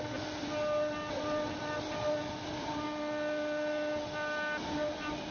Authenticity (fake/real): real